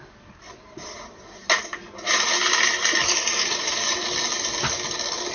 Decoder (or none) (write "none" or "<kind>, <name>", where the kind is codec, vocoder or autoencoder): none